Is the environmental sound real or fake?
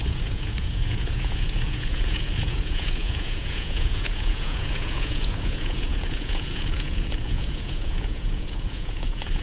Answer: fake